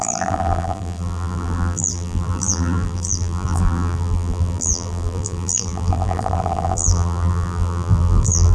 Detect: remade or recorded remade